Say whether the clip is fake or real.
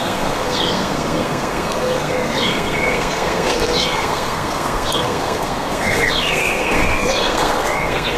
fake